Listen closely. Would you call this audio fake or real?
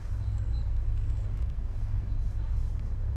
fake